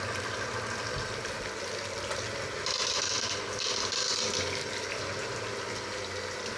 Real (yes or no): yes